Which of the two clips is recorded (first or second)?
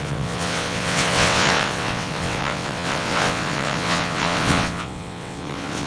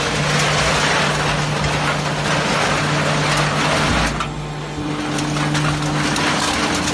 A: second